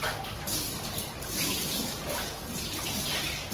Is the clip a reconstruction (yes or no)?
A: no